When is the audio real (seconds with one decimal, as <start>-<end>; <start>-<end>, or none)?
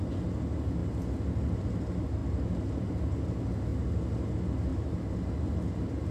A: 0.0-2.2; 2.9-3.7; 4.3-4.7; 5.5-6.1